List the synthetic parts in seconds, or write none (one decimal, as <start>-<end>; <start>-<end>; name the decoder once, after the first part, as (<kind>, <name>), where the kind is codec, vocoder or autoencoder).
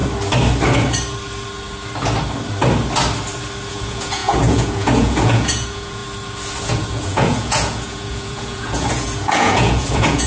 3.7-6.0 (vocoder, Vocos); 6.6-10.3